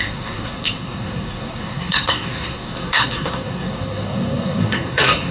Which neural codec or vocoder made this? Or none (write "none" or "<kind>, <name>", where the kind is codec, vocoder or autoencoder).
codec, SNAC